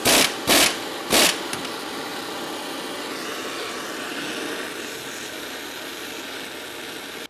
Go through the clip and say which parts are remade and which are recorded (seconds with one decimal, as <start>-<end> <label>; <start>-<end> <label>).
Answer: 0.0-7.3 recorded